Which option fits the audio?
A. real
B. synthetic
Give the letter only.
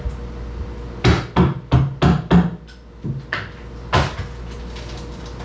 A